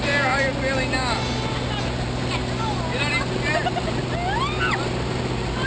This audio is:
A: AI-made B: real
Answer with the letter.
B